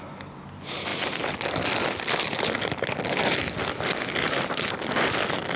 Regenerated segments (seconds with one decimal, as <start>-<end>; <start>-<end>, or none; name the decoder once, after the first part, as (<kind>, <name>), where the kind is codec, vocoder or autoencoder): none